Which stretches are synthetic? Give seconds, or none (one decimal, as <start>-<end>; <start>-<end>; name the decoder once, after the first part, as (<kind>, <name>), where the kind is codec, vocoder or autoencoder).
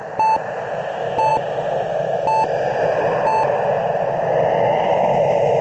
0.0-1.3 (vocoder, BigVGAN v2); 4.7-5.6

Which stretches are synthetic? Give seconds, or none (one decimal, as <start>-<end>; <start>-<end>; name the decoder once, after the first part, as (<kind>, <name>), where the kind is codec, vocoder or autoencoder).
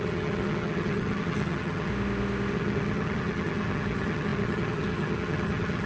0.0-1.9 (vocoder, HiFi-GAN); 2.5-5.9